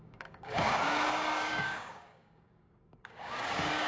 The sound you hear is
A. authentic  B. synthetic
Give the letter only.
B